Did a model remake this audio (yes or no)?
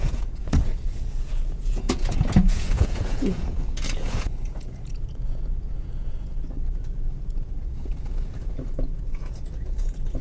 yes